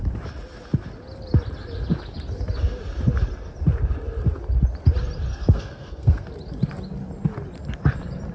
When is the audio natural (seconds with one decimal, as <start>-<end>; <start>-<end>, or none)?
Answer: 0.0-5.3; 6.3-8.3